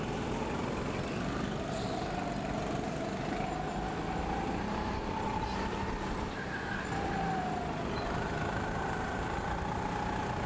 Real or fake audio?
real